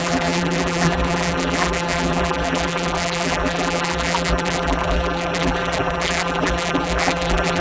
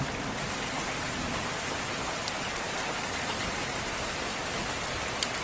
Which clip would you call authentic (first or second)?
second